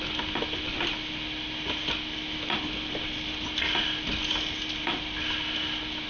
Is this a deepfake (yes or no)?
no